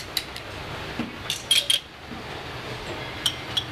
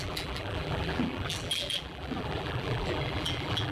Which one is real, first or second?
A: first